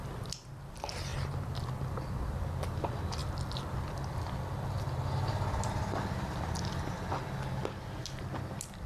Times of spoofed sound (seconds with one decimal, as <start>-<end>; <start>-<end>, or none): none